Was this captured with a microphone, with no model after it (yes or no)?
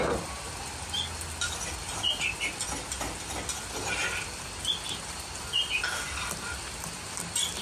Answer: yes